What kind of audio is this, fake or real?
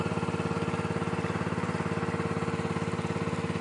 real